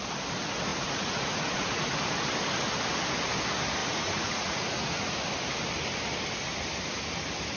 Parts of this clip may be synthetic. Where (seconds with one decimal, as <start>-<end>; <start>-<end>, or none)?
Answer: 0.7-1.9; 3.8-5.2